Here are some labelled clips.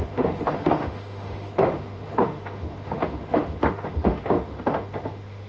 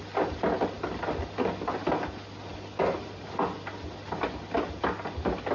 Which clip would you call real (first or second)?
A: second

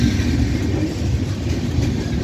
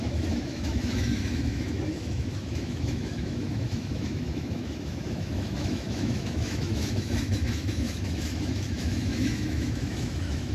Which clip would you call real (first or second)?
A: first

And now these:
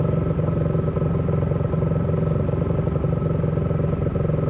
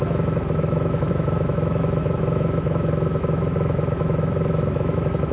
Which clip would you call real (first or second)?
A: first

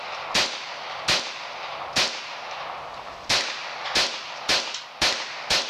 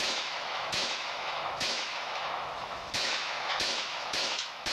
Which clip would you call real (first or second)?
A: first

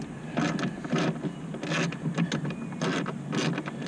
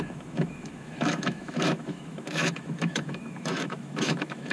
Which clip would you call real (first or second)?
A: first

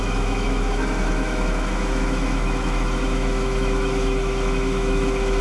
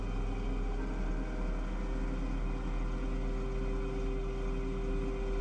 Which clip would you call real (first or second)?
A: second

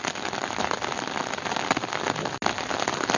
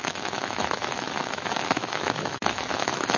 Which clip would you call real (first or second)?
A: first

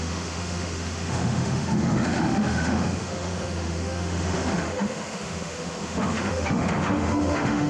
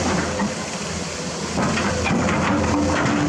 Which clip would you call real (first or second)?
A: second